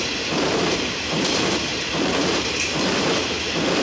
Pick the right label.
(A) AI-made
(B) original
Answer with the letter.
A